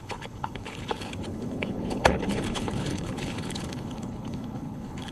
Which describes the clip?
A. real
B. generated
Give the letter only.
B